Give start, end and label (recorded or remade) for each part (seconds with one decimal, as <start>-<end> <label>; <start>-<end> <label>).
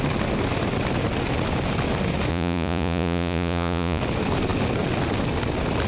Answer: 0.0-2.3 recorded; 2.3-4.0 remade; 4.0-5.9 recorded